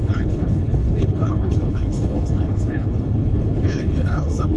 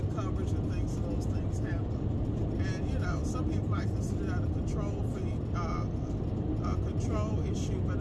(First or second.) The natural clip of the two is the second